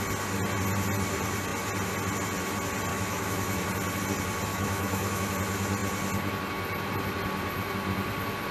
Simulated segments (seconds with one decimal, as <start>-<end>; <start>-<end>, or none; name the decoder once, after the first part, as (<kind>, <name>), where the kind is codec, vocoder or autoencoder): 2.9-3.6 (autoencoder, DAC-VAE); 4.5-5.3